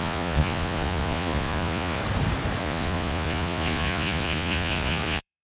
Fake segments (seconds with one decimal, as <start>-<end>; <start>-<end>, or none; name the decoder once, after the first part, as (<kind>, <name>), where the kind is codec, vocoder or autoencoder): 0.0-2.0 (vocoder, Vocos); 2.6-5.4

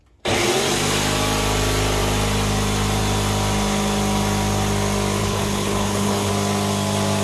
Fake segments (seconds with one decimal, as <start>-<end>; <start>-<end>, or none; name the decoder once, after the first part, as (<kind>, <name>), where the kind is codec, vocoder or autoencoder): 5.2-6.3 (codec, HILCodec)

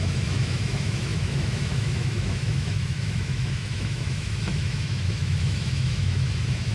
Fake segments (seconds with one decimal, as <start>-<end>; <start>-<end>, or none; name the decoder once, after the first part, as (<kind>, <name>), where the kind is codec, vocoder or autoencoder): 0.0-6.7 (autoencoder, DAC-VAE)

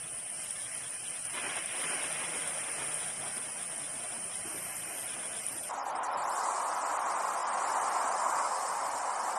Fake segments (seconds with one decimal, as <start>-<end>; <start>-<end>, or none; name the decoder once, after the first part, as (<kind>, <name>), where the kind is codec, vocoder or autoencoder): none